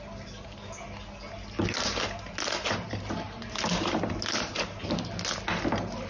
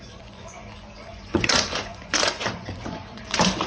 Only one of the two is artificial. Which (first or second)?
second